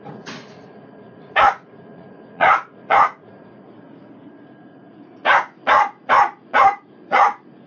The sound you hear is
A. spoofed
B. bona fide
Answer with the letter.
A